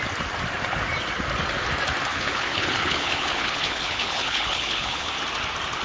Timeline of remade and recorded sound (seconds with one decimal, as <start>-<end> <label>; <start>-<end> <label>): 0.0-2.1 recorded; 2.1-5.1 remade; 5.1-5.8 recorded